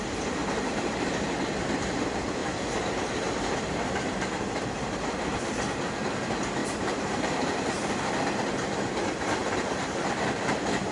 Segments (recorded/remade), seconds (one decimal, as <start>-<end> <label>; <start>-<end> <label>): 0.0-0.4 recorded; 0.4-1.1 remade; 1.1-2.4 recorded; 2.4-4.4 remade; 4.4-6.6 recorded; 6.6-7.9 remade; 7.9-9.4 recorded; 9.4-10.0 remade; 10.0-10.9 recorded